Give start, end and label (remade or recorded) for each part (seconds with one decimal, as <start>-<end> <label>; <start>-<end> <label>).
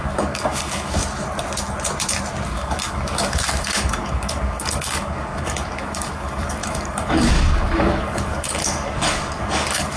0.0-1.0 remade; 1.0-2.5 recorded; 2.5-10.0 remade